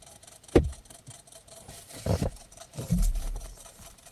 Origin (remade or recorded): remade